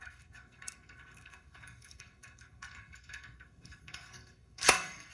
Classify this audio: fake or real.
fake